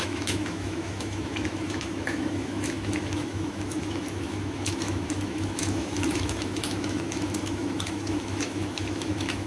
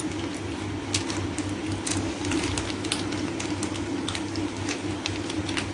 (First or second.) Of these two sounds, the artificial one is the first